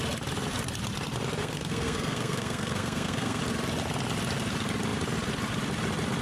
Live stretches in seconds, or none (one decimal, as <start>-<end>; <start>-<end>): 0.0-1.4; 3.4-6.2